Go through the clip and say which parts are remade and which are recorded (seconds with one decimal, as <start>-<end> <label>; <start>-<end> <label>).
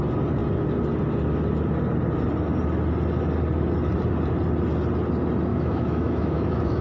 0.0-5.5 recorded; 5.5-6.8 remade